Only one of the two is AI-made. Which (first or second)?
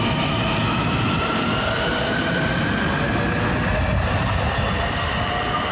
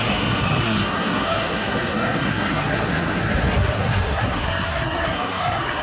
second